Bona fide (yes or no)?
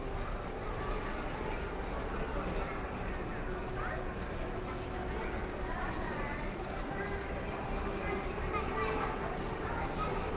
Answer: yes